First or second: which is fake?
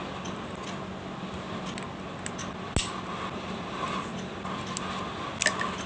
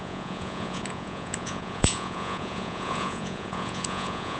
second